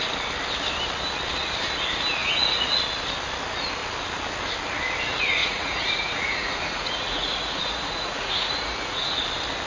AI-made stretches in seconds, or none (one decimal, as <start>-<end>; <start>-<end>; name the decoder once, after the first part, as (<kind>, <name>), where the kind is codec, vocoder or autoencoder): 2.2-2.8 (vocoder, Vocos); 5.4-9.2

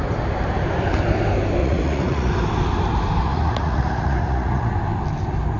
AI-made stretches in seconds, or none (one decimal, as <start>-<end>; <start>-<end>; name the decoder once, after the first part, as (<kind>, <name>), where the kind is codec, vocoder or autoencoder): 1.6-2.3 (vocoder, Vocos); 3.2-4.7

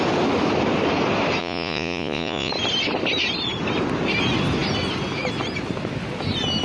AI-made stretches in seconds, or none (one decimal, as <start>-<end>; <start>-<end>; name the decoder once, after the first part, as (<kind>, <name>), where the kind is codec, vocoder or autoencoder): 1.4-2.5 (vocoder, Vocos)

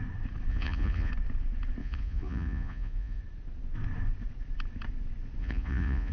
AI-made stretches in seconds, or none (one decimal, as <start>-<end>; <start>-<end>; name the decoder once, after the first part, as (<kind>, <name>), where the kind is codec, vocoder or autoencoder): 0.5-1.1 (vocoder, Vocos); 1.8-3.2; 5.4-6.1

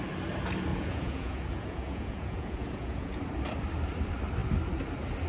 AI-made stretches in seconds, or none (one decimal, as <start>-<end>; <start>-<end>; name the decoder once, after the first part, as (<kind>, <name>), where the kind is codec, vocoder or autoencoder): 0.7-3.2 (vocoder, Vocos)

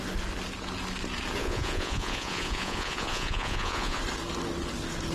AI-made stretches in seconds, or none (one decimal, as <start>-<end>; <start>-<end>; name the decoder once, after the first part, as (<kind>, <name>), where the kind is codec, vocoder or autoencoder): 1.4-4.0 (vocoder, Vocos)

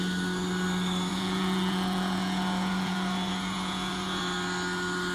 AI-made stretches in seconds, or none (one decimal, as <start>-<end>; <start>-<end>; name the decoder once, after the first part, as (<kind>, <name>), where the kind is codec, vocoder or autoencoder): 1.1-4.2 (vocoder, Vocos)

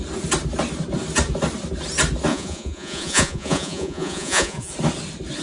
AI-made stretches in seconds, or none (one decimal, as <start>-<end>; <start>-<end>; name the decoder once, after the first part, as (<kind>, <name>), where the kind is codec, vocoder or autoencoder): 2.3-4.7 (vocoder, Vocos)